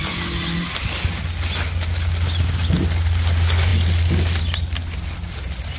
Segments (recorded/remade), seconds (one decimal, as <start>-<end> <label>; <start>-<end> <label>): 0.0-5.8 recorded